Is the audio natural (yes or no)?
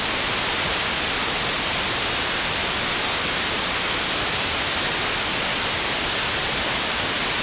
yes